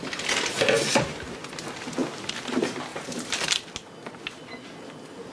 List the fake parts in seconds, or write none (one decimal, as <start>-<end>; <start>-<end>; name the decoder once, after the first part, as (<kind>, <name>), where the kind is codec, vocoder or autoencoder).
2.9-3.7 (vocoder, BigVGAN v2)